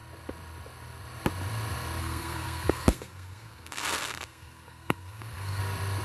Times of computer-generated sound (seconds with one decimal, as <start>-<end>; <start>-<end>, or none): 2.0-5.6